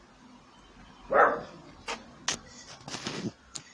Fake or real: real